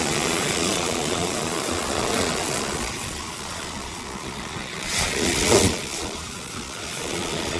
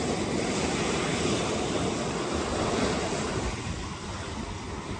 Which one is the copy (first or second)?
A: first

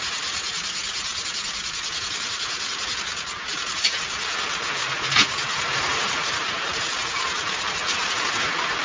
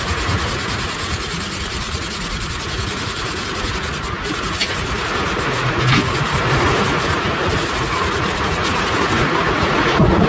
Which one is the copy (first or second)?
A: second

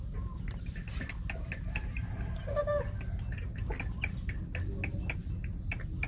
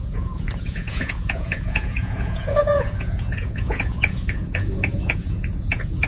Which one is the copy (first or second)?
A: second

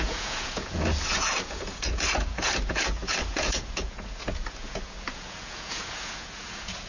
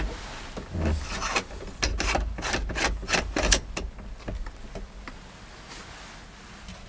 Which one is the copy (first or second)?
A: first